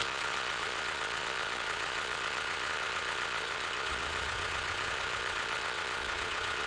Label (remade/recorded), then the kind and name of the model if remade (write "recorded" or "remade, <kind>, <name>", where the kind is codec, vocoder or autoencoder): remade, vocoder, Vocos